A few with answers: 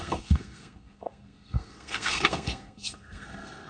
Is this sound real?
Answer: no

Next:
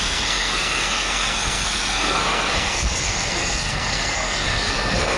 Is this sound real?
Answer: no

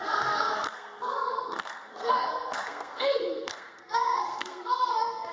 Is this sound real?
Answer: no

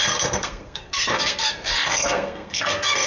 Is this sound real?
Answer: no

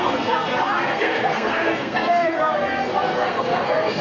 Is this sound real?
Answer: no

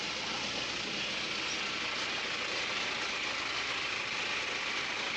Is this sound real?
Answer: yes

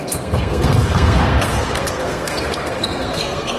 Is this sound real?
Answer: no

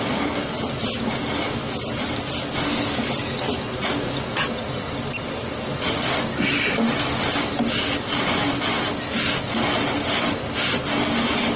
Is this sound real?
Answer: yes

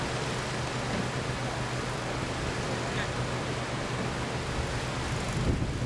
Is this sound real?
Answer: yes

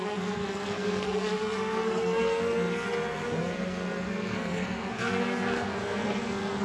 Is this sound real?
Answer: no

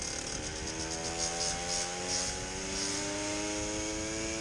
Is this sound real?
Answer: yes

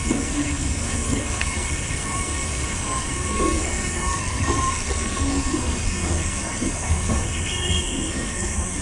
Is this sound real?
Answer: no